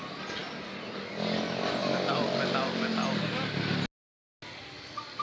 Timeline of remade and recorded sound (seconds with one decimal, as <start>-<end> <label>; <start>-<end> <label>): 0.0-5.2 recorded